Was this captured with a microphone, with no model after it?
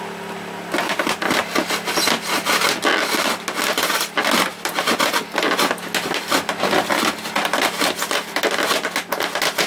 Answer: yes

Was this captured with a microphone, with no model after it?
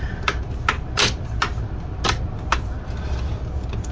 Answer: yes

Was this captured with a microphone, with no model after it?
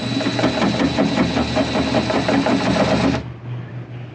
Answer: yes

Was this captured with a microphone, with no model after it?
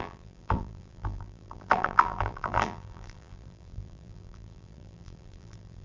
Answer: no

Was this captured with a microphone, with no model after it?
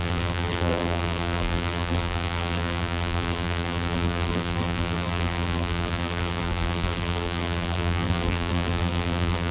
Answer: no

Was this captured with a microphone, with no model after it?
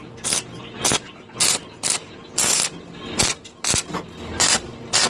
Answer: yes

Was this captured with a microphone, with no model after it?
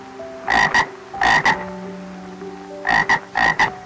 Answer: yes